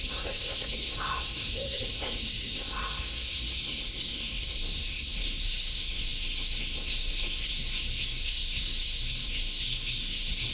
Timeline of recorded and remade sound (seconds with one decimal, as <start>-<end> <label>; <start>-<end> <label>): 0.0-10.5 remade